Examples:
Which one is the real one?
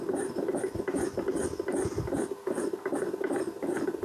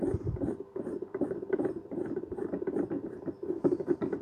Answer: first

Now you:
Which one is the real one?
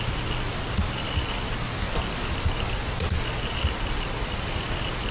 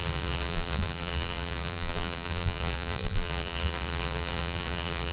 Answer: first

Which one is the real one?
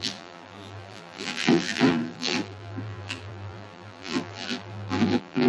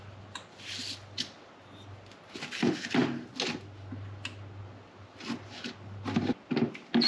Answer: second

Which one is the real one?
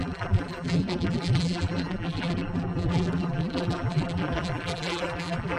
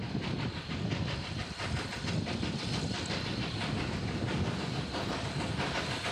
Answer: second